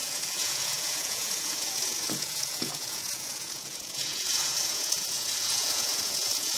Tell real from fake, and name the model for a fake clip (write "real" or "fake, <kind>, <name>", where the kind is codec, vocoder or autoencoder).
fake, vocoder, Vocos